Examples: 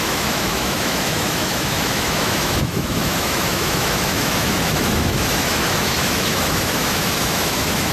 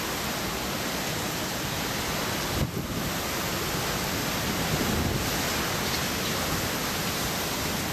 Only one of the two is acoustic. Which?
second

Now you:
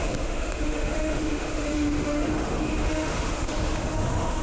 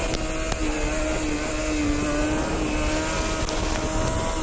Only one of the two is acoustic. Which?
second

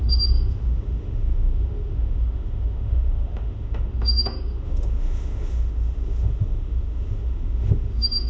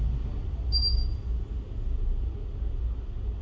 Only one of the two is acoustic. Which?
second